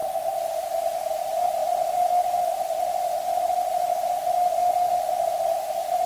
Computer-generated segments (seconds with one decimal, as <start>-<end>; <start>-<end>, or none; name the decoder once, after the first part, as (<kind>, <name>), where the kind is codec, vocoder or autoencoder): none